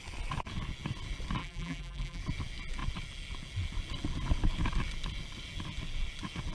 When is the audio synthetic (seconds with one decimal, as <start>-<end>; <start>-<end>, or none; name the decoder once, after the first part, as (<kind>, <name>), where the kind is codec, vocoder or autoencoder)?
1.4-2.2 (vocoder, BigVGAN v2)